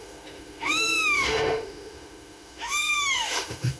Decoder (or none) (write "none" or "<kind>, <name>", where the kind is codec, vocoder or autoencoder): autoencoder, DAC-VAE